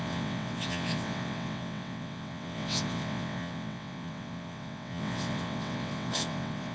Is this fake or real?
fake